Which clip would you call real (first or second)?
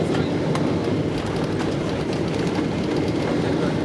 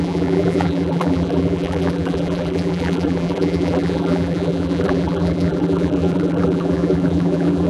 first